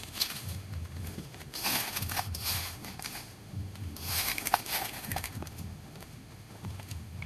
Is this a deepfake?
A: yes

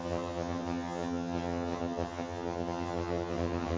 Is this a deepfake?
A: yes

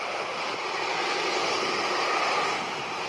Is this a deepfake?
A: no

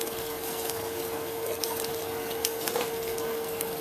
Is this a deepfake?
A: yes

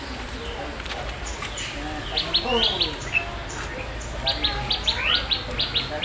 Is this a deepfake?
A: no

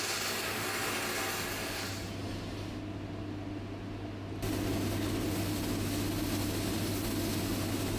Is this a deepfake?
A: no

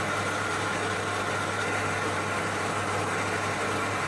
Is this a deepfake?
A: no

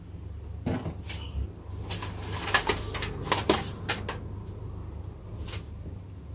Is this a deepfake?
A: no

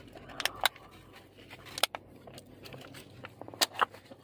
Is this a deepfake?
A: no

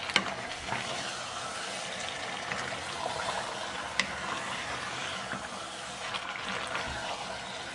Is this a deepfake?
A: no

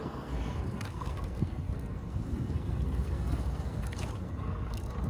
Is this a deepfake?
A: yes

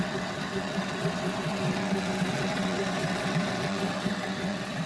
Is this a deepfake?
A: yes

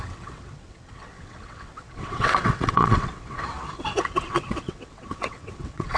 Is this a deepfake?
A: yes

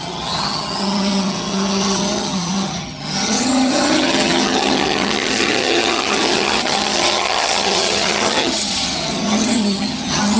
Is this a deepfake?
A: yes